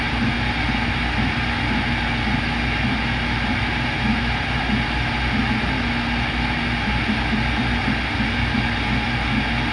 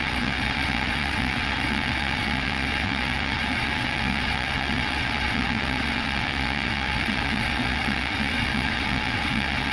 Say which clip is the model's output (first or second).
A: second